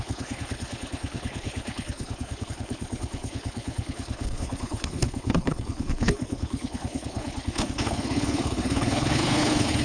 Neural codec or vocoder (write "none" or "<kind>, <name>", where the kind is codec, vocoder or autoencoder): codec, HILCodec